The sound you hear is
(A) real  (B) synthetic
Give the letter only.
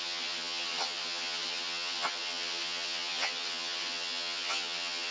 B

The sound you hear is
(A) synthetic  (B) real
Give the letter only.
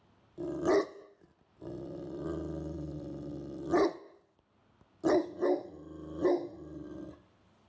B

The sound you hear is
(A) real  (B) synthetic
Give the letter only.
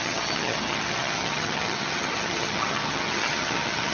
B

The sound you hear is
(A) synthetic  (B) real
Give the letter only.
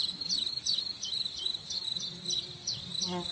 B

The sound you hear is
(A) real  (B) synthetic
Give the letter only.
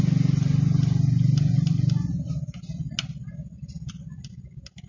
A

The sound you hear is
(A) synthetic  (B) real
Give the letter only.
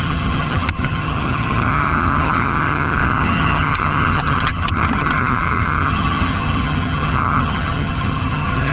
A